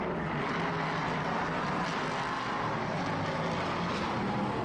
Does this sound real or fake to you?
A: real